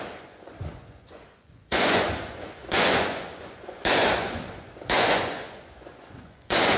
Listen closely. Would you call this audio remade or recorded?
remade